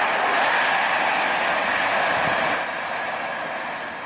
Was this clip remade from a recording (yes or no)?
no